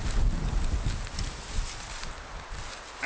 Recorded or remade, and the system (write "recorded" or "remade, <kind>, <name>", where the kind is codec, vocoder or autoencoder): recorded